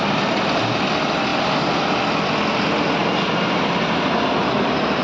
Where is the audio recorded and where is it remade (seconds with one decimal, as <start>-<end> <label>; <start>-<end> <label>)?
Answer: 0.0-5.0 recorded